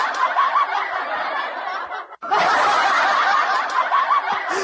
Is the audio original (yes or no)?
yes